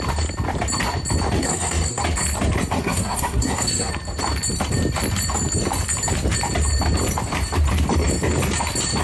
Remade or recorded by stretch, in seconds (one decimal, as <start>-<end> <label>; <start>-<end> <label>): 0.0-1.4 recorded; 1.4-2.0 remade; 2.0-2.7 recorded; 2.7-3.9 remade; 3.9-9.0 recorded